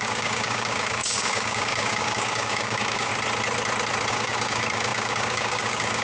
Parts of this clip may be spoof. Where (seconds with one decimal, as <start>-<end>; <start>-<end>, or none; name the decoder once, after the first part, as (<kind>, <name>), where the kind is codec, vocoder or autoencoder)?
0.0-3.1 (codec, DAC); 4.1-6.0